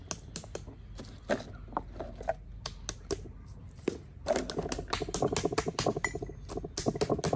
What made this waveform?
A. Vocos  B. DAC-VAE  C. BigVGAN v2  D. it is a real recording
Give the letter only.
D